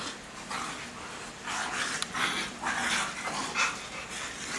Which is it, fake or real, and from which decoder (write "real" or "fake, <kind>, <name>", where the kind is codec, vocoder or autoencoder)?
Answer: real